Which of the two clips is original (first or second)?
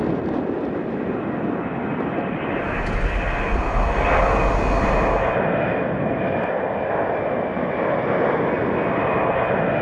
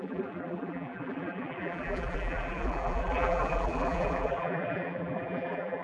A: first